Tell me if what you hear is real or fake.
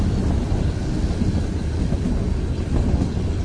real